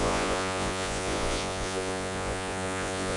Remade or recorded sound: remade